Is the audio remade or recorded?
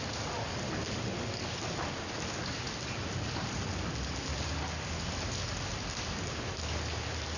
recorded